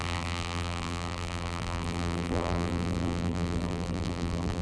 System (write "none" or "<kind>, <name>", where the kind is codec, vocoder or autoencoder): vocoder, BigVGAN v2